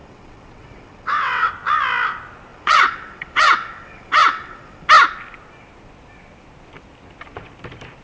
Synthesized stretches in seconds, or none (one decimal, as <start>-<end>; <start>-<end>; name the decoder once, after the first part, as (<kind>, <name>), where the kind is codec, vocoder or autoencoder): 0.0-1.5 (vocoder, WaveNeXt); 2.5-4.9